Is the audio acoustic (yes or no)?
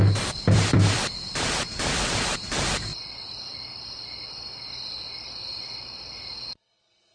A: no